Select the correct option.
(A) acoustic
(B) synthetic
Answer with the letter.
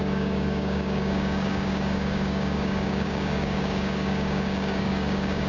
B